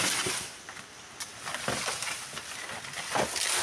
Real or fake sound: real